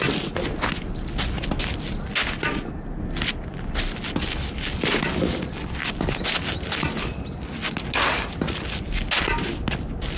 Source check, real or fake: real